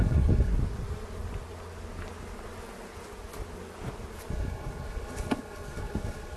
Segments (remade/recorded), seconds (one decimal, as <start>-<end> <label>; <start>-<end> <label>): 0.0-0.5 remade; 0.5-4.3 recorded; 4.3-6.4 remade